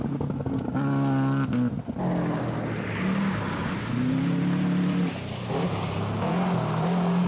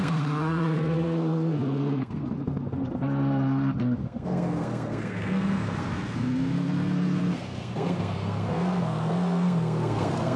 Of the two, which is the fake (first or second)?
second